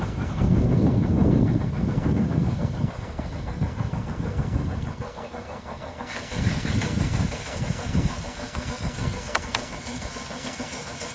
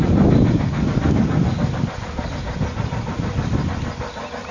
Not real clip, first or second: first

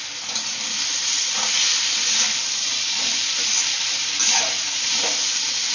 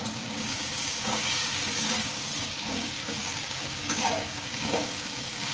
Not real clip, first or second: second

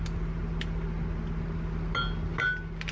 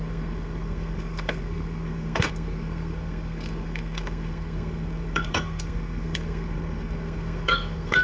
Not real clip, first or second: second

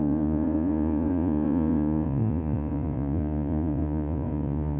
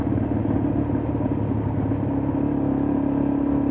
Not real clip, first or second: first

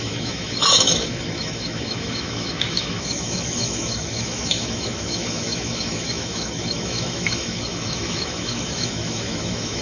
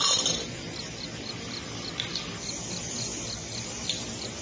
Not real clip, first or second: first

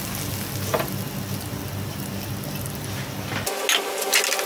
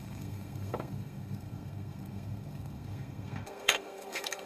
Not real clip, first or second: second